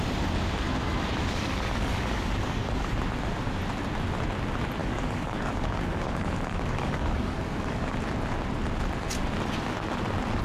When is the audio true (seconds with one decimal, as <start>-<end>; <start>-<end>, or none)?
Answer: 0.0-1.2; 2.9-4.8; 7.9-10.4